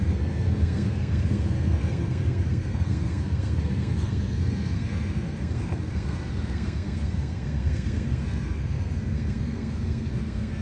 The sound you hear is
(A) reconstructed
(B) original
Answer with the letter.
A